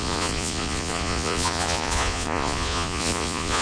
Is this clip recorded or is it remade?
remade